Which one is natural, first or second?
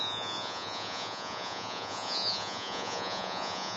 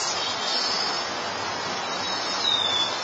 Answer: second